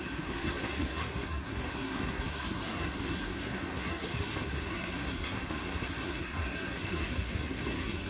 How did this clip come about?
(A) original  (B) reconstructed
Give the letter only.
B